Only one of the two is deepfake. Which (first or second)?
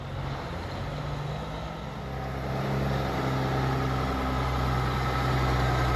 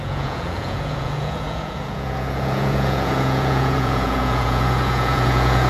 second